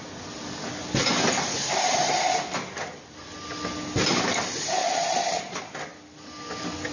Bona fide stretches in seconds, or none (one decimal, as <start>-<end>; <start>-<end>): 0.0-4.8; 5.6-6.9